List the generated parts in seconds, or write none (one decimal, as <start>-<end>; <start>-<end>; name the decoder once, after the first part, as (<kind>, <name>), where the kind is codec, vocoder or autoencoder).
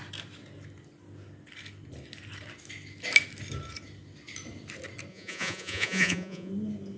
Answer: 5.1-6.5 (vocoder, Vocos)